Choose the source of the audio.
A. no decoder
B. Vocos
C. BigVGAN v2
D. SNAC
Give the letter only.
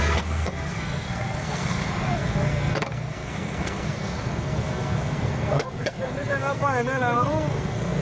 D